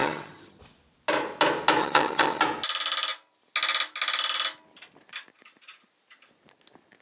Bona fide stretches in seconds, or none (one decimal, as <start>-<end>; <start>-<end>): 0.6-1.8; 2.4-7.0